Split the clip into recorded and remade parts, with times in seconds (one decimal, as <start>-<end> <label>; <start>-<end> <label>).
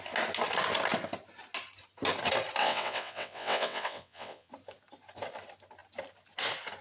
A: 0.0-2.6 recorded; 2.6-4.5 remade; 4.5-6.8 recorded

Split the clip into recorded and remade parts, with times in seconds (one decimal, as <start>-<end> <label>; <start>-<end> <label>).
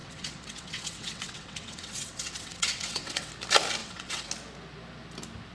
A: 0.0-3.3 remade; 3.3-3.8 recorded; 3.8-4.3 remade; 4.3-5.5 recorded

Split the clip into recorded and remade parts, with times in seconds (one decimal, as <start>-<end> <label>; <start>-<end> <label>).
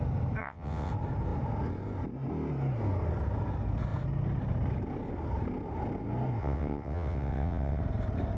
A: 0.0-0.4 recorded; 0.4-0.9 remade; 0.9-6.4 recorded; 6.4-7.8 remade; 7.8-8.4 recorded